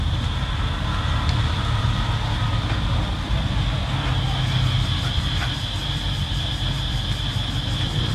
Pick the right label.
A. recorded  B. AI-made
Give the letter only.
B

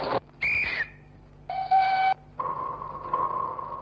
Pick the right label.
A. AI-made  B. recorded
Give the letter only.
B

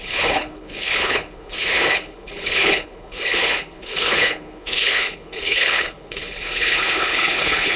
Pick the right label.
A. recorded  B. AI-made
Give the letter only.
B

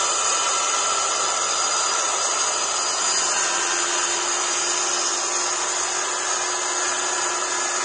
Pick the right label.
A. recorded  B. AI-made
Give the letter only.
A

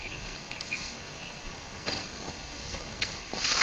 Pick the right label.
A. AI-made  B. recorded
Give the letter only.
A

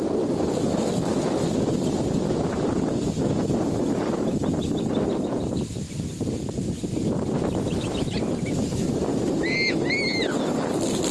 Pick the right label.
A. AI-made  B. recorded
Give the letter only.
B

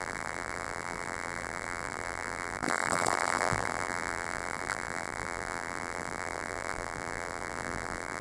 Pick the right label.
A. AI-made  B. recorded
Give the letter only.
A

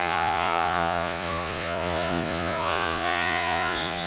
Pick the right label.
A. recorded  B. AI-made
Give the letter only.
B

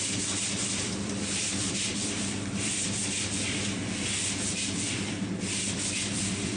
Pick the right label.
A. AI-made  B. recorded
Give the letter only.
A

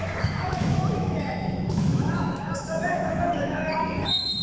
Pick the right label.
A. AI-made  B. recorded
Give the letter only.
A